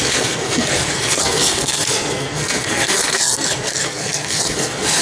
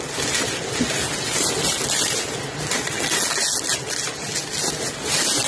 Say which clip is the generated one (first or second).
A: first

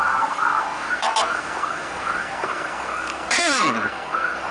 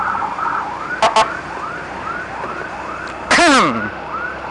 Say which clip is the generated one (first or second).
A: first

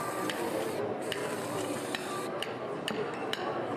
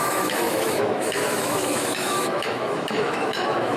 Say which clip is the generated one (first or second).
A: second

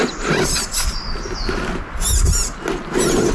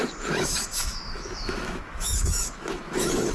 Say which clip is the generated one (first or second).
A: second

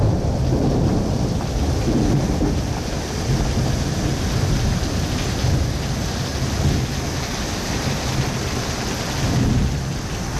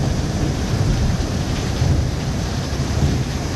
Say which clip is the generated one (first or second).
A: second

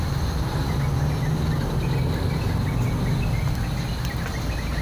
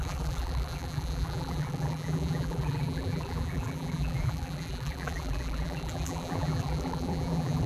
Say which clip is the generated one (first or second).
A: second